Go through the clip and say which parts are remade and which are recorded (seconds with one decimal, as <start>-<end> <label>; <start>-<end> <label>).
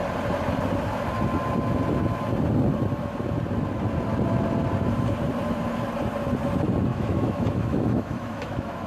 0.0-6.9 recorded; 6.9-8.9 remade